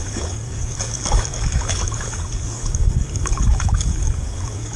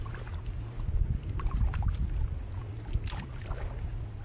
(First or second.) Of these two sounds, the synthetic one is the first